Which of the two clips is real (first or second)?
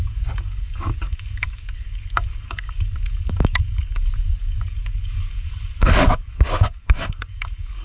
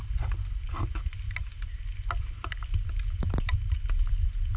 second